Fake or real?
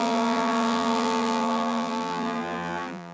fake